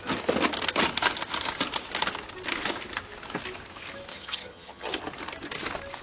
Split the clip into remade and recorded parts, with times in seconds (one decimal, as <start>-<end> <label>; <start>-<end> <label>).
0.0-4.1 recorded; 4.1-5.0 remade; 5.0-6.0 recorded